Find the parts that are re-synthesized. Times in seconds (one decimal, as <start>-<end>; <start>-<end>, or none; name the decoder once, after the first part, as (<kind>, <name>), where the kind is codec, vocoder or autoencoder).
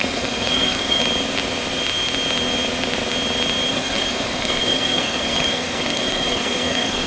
0.0-1.0 (codec, SNAC); 3.7-7.1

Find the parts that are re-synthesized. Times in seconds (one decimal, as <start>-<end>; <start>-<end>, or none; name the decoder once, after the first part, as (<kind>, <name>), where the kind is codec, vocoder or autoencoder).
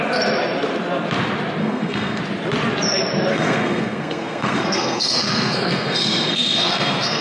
1.6-2.2 (codec, SNAC); 3.3-7.2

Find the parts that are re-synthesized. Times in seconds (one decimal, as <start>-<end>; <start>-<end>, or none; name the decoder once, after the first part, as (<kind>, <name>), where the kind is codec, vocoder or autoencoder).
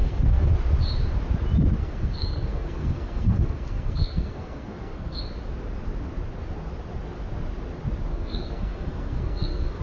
0.0-0.5 (codec, SNAC); 1.8-5.2; 8.1-9.8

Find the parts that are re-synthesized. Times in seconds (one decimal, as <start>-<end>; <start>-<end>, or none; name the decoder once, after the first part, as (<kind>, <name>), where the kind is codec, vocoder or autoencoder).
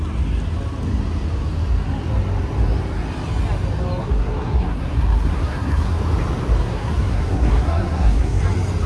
4.0-6.0 (codec, SNAC); 6.6-8.4